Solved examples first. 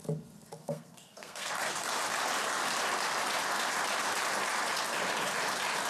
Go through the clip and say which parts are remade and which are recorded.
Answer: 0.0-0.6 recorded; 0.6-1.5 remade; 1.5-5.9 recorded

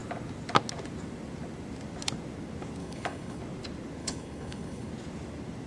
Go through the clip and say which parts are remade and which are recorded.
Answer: 0.0-2.8 recorded; 2.8-3.4 remade; 3.4-4.0 recorded; 4.0-4.9 remade; 4.9-5.7 recorded

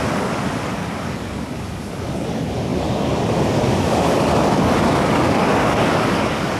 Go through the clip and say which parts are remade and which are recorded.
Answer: 0.0-6.6 remade

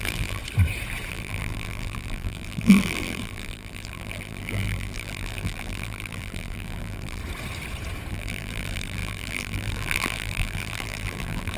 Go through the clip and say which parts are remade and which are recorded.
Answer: 0.0-0.4 remade; 0.4-1.1 recorded; 1.1-7.2 remade; 7.2-8.1 recorded; 8.1-11.6 remade

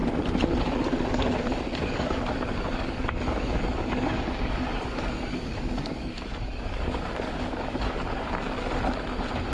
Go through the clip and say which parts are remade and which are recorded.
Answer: 0.0-1.1 recorded; 1.1-8.7 remade; 8.7-9.5 recorded

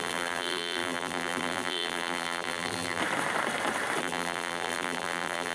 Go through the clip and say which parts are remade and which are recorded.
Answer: 0.0-3.0 remade; 3.0-4.0 recorded; 4.0-5.5 remade

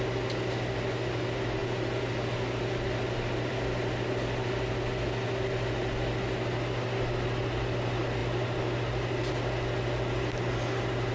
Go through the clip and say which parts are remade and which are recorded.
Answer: 0.0-11.1 recorded